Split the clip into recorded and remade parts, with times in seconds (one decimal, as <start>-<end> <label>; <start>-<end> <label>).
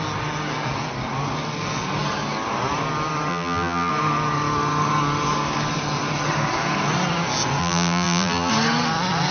0.0-3.3 recorded; 3.3-3.9 remade; 3.9-7.6 recorded; 7.6-8.5 remade; 8.5-9.3 recorded